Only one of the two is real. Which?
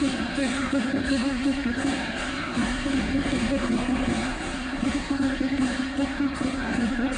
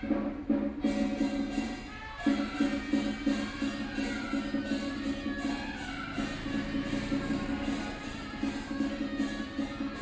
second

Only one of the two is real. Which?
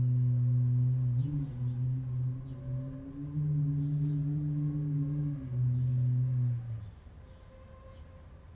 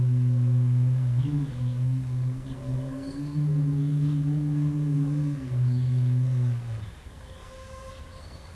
first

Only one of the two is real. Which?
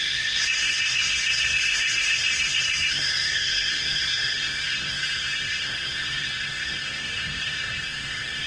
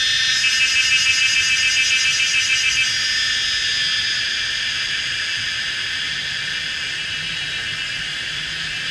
second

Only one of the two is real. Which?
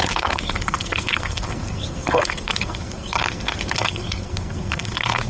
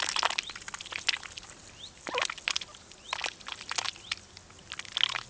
second